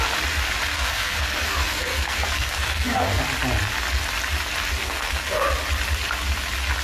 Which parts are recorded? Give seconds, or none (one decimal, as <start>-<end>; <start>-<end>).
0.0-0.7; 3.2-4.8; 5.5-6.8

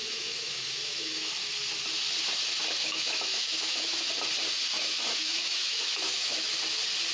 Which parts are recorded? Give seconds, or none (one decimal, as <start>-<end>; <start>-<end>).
1.3-2.8; 4.1-4.7; 6.5-7.1

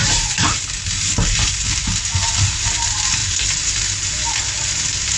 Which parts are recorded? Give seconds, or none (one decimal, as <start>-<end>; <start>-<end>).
0.5-3.2; 3.8-5.2